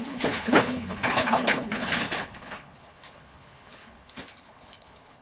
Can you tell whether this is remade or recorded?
remade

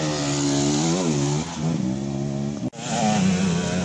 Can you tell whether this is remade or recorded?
recorded